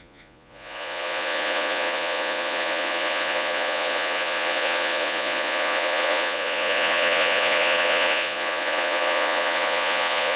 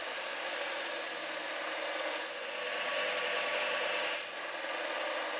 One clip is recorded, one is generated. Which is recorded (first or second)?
second